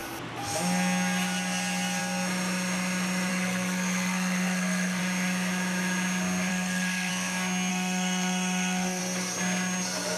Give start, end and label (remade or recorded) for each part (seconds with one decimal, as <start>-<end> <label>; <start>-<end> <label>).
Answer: 0.0-3.3 recorded; 3.3-5.0 remade; 5.0-6.5 recorded; 6.5-7.1 remade; 7.1-7.7 recorded; 7.7-9.0 remade; 9.0-10.2 recorded